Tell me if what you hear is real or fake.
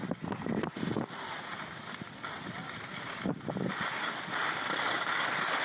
real